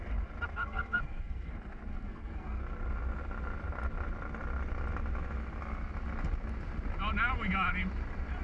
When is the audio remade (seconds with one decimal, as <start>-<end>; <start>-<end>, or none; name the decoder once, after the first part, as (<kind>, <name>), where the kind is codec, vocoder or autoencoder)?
0.6-1.5 (codec, SNAC); 1.9-2.6